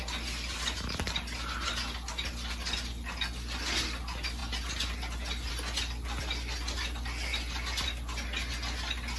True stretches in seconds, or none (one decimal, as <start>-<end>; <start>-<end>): 0.0-9.2